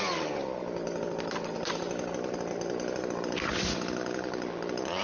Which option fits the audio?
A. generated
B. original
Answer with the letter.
B